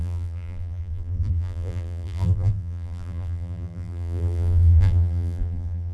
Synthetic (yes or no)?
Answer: yes